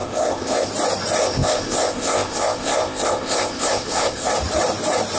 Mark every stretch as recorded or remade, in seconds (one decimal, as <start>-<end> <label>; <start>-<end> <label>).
0.0-0.7 remade; 0.7-1.2 recorded; 1.2-4.3 remade; 4.3-5.2 recorded

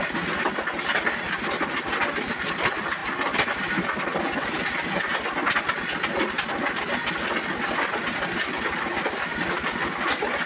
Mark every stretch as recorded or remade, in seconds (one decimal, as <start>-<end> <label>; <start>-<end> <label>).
0.0-10.5 recorded

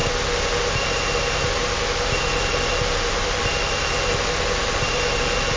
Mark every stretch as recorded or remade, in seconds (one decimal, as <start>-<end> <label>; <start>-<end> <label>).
0.0-5.6 recorded

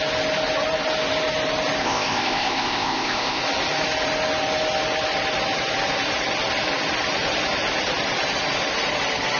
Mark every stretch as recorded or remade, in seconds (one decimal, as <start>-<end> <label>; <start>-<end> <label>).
0.0-1.8 recorded; 1.8-3.4 remade; 3.4-9.4 recorded